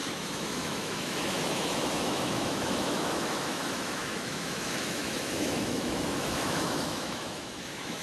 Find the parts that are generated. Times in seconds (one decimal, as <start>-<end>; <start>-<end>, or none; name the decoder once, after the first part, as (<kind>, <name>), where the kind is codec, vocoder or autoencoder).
0.0-8.0 (autoencoder, DAC-VAE)